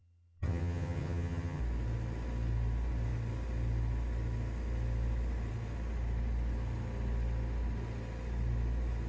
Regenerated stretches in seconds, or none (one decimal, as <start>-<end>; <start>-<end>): 0.0-1.6